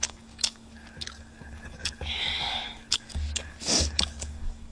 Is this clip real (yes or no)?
no